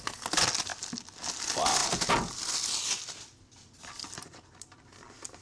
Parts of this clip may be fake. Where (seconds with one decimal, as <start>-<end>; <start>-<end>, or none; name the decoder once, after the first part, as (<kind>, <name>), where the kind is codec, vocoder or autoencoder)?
none

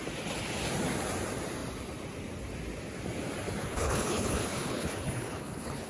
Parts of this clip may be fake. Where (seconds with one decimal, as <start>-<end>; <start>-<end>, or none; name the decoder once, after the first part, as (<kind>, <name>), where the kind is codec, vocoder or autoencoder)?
3.6-5.9 (codec, HILCodec)

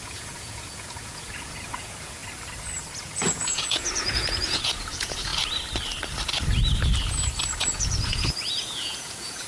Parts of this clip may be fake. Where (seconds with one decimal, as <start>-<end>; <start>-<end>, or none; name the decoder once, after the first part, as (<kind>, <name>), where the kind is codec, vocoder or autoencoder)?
0.0-2.2 (vocoder, Vocos); 3.0-5.3; 7.6-9.5

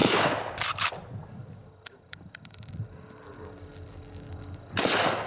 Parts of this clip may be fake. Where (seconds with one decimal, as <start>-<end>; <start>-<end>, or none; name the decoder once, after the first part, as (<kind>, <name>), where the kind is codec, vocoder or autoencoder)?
none

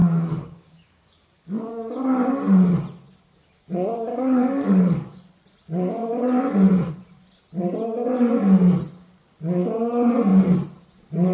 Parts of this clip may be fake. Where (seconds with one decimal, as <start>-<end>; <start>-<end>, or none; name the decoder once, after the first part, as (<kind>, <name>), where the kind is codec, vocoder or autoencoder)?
0.0-1.7 (codec, DAC); 4.1-5.2